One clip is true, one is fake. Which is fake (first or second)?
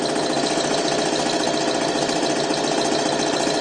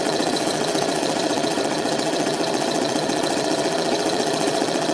second